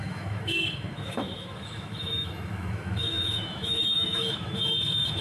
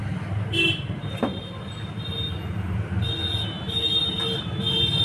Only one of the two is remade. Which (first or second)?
first